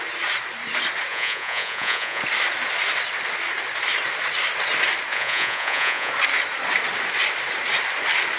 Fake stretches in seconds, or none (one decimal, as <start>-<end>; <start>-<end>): 1.1-2.2; 5.1-6.1